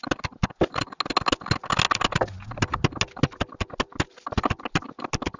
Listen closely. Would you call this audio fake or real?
real